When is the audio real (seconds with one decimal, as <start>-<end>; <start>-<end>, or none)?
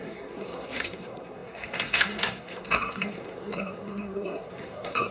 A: none